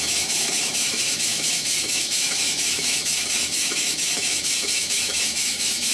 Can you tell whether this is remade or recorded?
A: remade